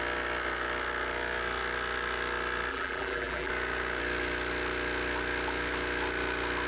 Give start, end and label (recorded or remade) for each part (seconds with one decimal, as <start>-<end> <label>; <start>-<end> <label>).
0.0-2.7 recorded; 2.7-3.5 remade; 3.5-6.7 recorded